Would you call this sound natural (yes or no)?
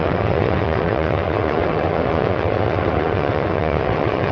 no